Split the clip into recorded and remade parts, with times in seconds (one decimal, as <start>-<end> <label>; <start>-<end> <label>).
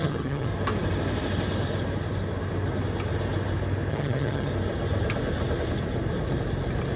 0.0-0.5 remade; 0.5-3.9 recorded; 3.9-4.5 remade; 4.5-7.0 recorded